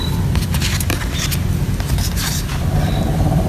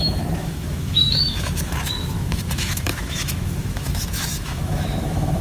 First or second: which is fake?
second